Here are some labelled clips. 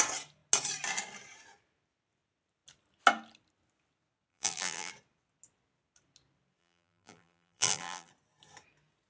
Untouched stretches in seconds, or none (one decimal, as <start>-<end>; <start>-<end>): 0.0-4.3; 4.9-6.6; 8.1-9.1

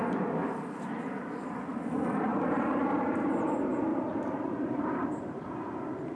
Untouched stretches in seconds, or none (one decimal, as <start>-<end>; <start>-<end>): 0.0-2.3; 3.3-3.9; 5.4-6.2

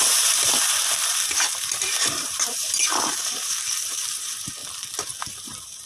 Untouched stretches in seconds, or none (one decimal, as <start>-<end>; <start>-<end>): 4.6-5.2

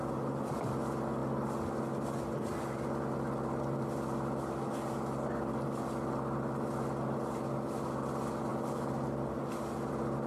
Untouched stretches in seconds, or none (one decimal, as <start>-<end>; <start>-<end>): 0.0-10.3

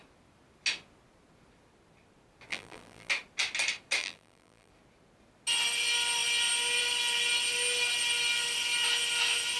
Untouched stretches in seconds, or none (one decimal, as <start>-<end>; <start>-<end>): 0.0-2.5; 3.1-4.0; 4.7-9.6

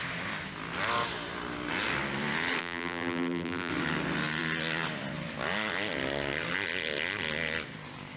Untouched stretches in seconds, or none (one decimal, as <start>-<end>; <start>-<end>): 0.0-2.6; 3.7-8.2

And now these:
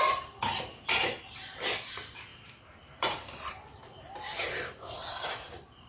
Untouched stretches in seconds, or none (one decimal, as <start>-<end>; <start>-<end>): 0.0-2.3